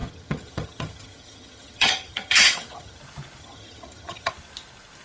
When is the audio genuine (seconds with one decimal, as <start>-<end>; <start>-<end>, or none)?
3.0-3.4; 4.3-5.0